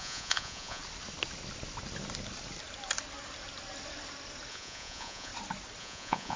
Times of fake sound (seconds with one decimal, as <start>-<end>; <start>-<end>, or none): 0.0-0.8; 4.5-5.3; 5.8-6.4